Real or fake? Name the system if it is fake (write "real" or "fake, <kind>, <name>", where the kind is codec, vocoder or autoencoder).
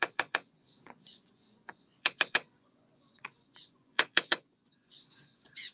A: fake, vocoder, Vocos